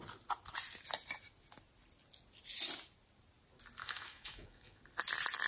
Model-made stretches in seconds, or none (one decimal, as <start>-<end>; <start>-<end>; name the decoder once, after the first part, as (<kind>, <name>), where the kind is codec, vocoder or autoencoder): 3.8-4.8 (autoencoder, DAC-VAE)